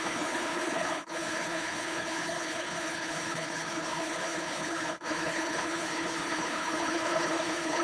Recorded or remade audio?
remade